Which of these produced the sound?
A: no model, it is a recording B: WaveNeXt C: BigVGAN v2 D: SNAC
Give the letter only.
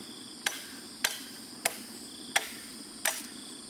A